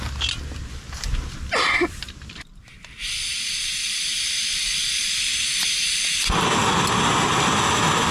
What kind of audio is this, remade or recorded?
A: recorded